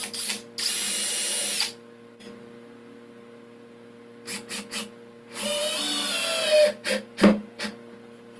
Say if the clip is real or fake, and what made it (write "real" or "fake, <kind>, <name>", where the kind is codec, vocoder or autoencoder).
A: real